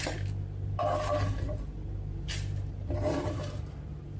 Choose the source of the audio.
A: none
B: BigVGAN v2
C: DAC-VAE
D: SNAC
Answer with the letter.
B